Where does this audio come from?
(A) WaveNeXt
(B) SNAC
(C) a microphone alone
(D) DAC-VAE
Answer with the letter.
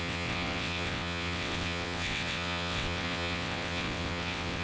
A